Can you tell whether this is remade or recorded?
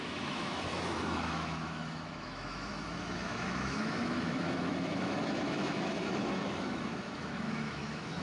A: remade